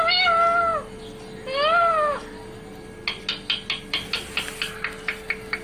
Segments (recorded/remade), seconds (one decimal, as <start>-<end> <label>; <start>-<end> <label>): 0.0-5.6 recorded